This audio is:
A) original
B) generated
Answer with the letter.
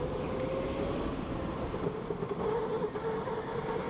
A